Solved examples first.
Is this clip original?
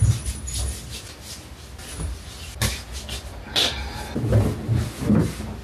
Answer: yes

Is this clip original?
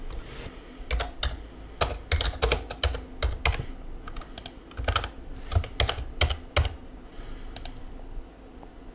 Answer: yes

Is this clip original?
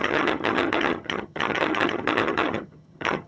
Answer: no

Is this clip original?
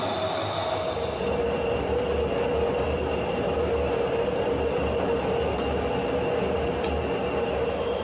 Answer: yes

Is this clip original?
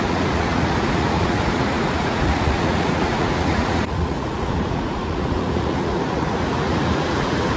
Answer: no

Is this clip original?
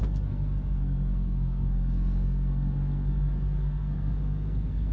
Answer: no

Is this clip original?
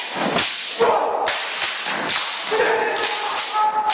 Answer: yes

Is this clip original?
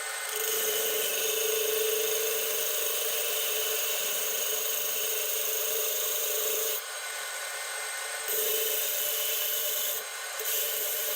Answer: no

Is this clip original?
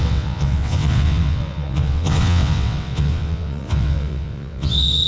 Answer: no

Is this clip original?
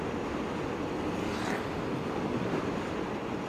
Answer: yes